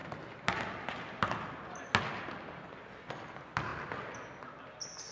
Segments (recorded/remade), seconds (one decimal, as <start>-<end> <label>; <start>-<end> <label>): 0.0-5.1 recorded